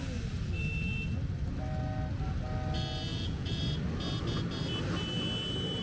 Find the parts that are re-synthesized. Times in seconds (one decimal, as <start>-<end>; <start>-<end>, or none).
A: 3.1-3.6